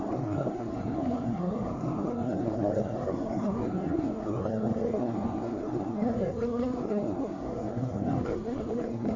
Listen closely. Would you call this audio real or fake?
fake